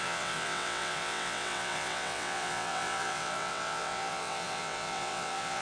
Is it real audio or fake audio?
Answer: fake